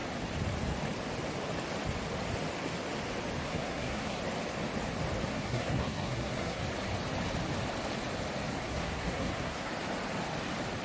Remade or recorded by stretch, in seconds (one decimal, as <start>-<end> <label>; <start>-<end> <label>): 0.0-3.4 recorded; 3.4-4.2 remade; 4.2-5.2 recorded; 5.2-6.6 remade; 6.6-8.7 recorded; 8.7-9.7 remade; 9.7-10.8 recorded